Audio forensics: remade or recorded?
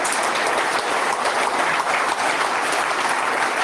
recorded